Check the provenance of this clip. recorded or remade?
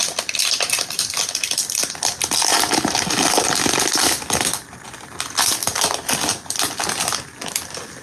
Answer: recorded